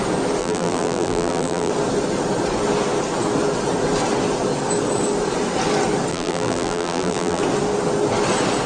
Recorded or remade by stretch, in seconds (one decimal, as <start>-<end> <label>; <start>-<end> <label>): 0.0-0.4 recorded; 0.4-1.7 remade; 1.7-6.1 recorded; 6.1-7.4 remade; 7.4-8.7 recorded